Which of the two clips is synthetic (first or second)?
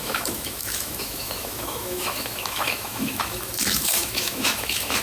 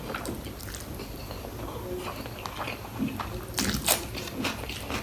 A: first